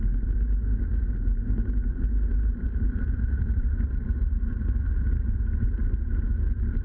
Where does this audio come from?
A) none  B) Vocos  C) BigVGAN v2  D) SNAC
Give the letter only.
C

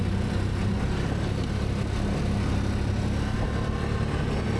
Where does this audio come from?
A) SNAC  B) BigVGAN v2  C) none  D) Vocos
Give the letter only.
C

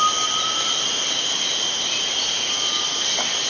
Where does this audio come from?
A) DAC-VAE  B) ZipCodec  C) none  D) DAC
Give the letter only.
C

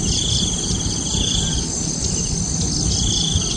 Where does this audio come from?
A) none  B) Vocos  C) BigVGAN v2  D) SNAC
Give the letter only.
A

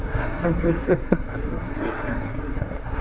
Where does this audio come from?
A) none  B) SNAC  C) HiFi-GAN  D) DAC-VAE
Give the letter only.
B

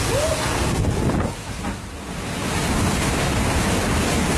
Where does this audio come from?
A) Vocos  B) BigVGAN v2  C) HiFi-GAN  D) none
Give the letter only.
D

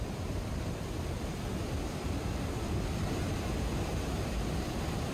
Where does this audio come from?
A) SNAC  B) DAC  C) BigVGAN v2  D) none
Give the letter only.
C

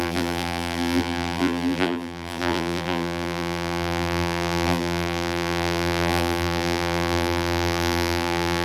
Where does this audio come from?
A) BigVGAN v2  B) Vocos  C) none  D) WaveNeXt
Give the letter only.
A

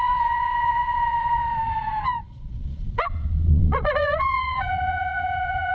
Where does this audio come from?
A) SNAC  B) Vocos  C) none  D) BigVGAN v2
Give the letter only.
B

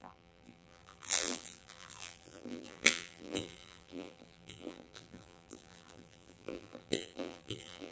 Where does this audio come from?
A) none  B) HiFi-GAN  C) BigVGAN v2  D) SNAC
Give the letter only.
C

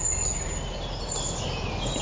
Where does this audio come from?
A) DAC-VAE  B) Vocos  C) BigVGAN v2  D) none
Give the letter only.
D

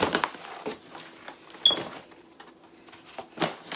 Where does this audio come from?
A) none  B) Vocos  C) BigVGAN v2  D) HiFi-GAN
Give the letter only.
A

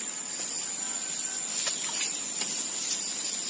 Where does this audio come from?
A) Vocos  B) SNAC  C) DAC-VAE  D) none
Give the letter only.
D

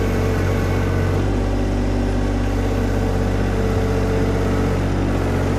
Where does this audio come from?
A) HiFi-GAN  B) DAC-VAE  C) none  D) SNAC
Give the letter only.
C